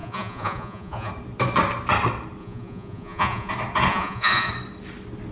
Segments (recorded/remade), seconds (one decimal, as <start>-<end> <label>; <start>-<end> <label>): 0.0-1.1 remade; 1.1-2.4 recorded; 2.4-3.5 remade; 3.5-3.9 recorded; 3.9-4.5 remade; 4.5-5.3 recorded